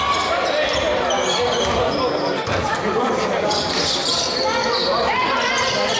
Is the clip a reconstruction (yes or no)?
no